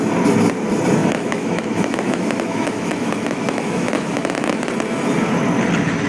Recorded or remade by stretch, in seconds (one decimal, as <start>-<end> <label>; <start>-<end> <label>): 0.0-1.0 recorded; 1.0-4.7 remade; 4.7-6.1 recorded